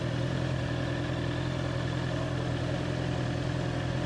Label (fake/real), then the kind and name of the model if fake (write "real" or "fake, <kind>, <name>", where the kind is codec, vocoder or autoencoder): real